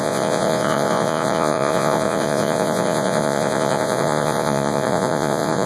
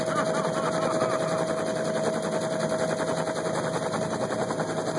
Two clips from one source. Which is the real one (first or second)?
second